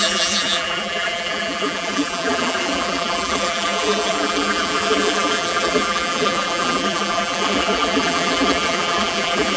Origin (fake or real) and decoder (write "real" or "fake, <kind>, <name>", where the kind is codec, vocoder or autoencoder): fake, vocoder, BigVGAN v2